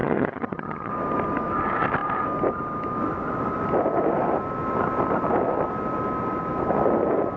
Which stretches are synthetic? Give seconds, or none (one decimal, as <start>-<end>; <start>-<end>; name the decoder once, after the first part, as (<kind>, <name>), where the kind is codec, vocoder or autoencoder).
0.0-0.9 (vocoder, HiFi-GAN)